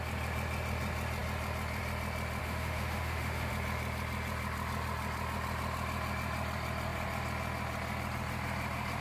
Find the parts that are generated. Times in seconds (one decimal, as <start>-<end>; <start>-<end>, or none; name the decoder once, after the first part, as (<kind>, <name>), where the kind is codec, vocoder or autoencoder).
2.4-3.5 (autoencoder, DAC-VAE)